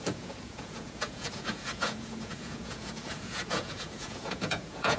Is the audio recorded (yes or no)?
no